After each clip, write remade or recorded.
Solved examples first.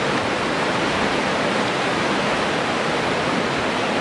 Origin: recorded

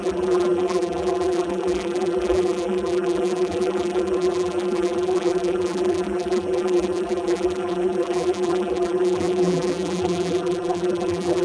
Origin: remade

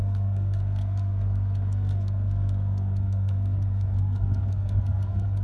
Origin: remade